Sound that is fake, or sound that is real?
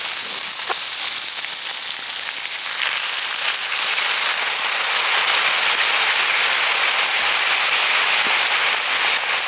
real